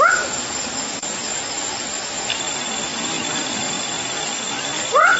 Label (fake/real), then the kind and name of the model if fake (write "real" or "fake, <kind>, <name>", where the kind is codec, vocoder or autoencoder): real